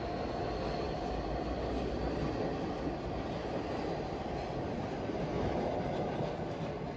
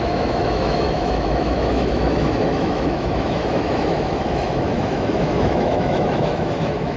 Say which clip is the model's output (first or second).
second